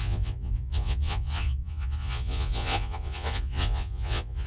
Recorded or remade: remade